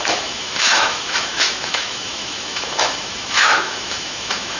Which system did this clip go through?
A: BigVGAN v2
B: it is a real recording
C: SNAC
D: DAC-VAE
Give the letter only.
D